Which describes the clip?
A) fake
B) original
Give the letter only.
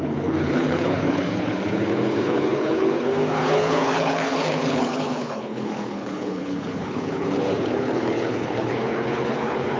A